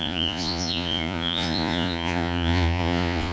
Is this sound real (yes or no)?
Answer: no